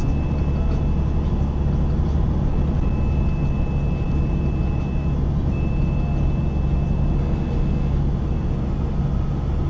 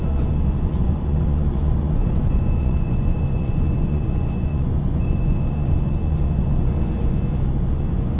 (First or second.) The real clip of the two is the first